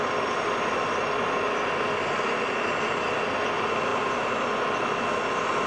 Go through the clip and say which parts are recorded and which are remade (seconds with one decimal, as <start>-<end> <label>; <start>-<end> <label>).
0.0-5.7 recorded